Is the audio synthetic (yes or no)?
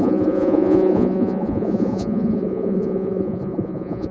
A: yes